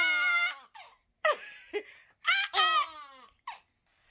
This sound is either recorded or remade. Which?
recorded